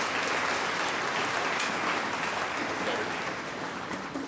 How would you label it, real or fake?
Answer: real